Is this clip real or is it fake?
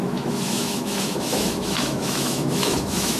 fake